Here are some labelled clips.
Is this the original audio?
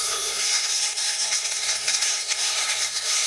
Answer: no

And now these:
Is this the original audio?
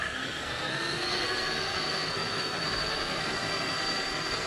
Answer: no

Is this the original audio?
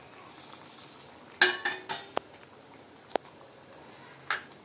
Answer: yes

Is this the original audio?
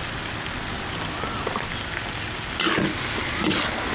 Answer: yes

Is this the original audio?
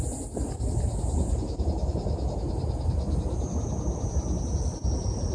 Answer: yes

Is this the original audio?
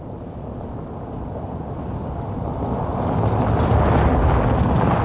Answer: yes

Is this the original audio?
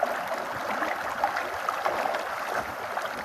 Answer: yes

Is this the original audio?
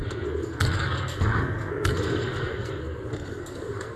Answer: no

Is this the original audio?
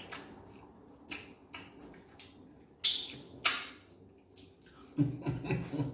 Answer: yes